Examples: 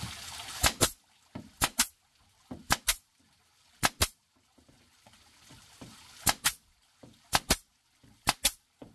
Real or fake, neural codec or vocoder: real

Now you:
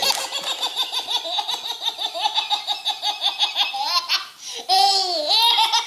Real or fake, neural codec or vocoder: real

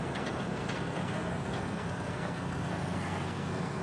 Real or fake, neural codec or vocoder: fake, codec, SNAC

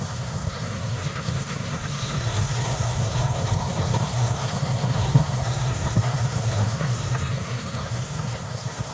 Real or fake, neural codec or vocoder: fake, codec, SNAC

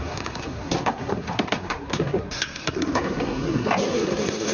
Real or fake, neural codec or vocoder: fake, codec, SNAC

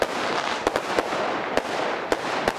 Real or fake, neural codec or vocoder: real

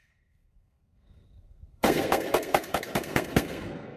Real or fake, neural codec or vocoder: fake, codec, SNAC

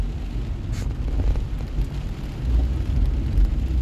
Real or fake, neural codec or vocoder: real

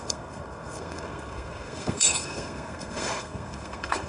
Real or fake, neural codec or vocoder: fake, codec, SNAC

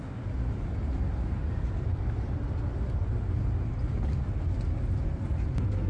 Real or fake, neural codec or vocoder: real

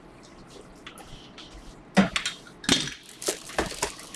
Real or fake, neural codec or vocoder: real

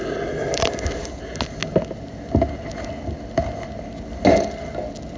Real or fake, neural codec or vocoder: real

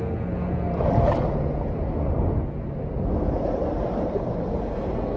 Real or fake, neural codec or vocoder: real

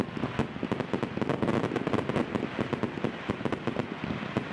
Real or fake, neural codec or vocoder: real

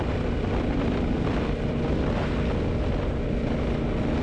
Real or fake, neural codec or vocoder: real